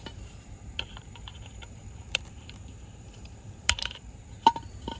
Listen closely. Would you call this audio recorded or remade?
remade